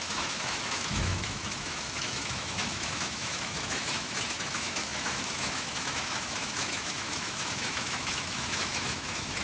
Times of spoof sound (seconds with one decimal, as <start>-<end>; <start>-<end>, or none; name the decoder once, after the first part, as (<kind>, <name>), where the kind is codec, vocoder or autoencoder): 0.0-9.4 (autoencoder, DAC-VAE)